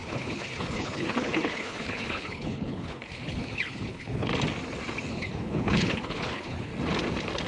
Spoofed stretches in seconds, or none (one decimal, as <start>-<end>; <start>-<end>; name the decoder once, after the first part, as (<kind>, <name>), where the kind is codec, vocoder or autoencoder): 0.0-4.3 (codec, HILCodec); 5.1-6.7